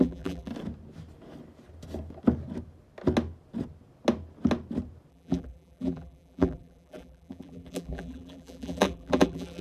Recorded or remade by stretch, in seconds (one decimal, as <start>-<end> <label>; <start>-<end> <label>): 0.0-0.5 remade; 0.5-5.1 recorded; 5.1-9.6 remade